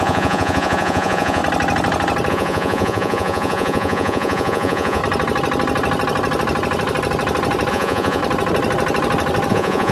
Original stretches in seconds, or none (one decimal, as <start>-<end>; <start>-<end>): 1.4-2.3; 5.0-7.7; 8.2-9.5